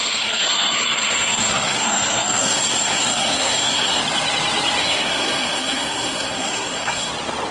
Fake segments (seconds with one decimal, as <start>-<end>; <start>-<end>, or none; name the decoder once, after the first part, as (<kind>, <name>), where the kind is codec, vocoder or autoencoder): 0.0-4.0 (codec, SNAC); 4.8-7.1